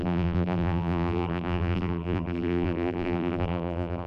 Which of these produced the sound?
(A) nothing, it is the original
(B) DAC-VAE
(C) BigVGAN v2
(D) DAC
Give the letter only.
C